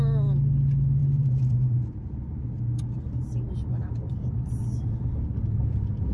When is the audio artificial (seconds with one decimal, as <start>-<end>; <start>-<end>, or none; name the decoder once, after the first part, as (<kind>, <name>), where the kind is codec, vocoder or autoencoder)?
1.0-4.7 (vocoder, BigVGAN v2)